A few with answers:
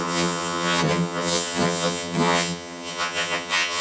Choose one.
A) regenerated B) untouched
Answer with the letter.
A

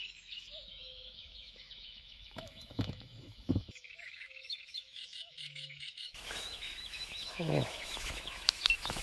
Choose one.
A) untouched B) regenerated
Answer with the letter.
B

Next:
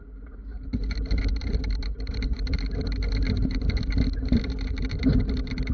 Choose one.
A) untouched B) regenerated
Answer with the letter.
A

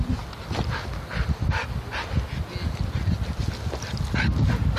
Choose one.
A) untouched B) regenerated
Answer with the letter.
A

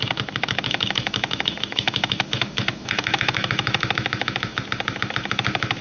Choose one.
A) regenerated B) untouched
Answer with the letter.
A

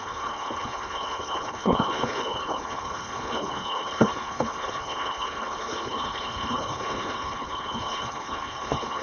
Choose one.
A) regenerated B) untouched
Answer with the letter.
A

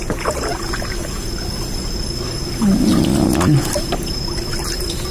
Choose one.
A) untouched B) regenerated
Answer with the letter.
A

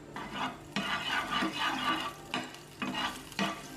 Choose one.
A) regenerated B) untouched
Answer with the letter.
B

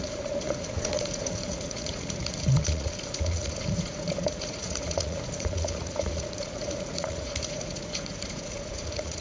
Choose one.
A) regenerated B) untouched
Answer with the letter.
A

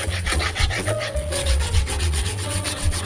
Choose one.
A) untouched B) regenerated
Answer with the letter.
B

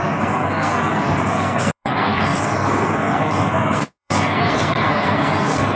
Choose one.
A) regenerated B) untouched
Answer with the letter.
A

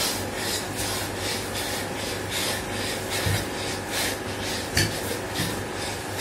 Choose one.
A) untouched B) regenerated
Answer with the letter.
A